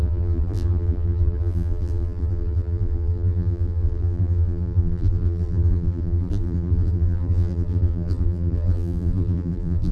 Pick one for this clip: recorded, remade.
remade